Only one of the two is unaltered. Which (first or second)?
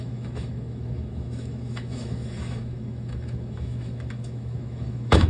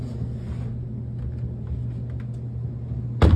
second